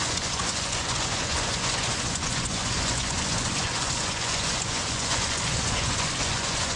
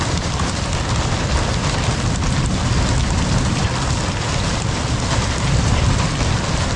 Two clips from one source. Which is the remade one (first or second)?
first